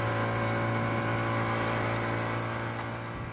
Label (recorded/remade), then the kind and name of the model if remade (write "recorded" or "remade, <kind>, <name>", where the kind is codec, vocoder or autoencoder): recorded